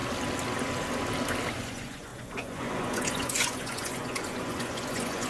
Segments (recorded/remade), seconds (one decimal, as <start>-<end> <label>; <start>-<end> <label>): 0.0-1.5 recorded; 1.5-5.3 remade